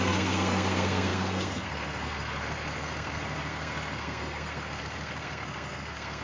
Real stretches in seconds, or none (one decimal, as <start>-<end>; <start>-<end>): none

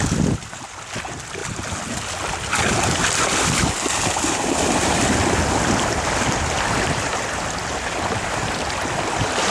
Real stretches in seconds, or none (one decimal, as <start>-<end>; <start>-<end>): 0.0-9.5

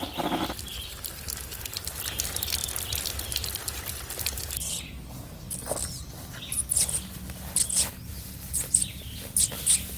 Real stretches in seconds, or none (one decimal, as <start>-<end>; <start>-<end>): 0.0-10.0

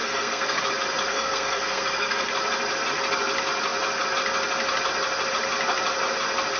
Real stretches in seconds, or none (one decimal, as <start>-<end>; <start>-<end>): 0.6-1.1; 2.3-6.6

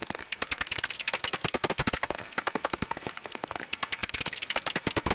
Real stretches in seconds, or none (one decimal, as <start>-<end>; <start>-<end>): none